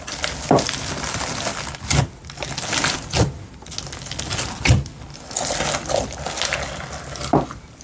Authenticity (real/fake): real